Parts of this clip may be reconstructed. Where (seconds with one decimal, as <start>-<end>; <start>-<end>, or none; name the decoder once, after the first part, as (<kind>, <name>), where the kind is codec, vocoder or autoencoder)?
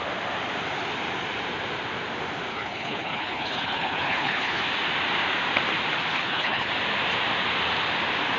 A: 2.5-4.6 (codec, HILCodec); 6.1-6.7